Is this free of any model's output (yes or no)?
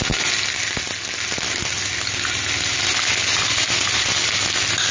yes